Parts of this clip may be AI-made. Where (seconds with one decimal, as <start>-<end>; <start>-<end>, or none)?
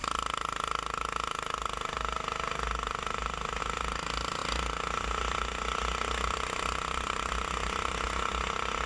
none